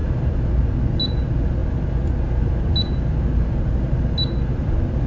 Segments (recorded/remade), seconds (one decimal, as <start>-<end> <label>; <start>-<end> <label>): 0.0-0.5 remade; 0.5-5.1 recorded